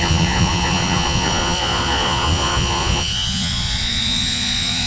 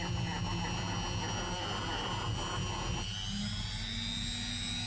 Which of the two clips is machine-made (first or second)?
first